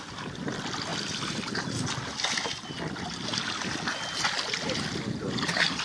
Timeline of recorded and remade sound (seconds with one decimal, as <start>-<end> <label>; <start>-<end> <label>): 0.0-5.8 recorded